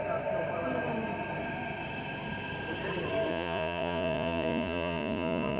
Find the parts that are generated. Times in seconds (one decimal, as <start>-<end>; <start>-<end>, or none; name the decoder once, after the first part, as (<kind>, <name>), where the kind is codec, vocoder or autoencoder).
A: 3.3-5.6 (vocoder, Vocos)